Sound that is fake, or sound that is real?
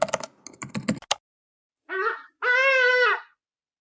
real